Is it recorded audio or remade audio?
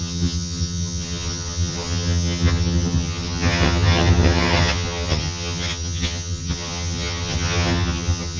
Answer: remade